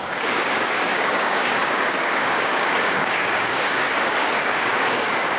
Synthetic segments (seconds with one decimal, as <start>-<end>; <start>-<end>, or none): 0.0-5.4